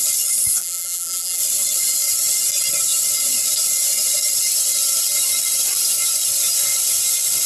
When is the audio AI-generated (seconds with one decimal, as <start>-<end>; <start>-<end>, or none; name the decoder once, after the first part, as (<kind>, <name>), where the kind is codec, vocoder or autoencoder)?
0.6-1.4 (vocoder, BigVGAN v2)